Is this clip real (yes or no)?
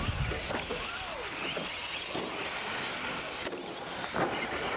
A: yes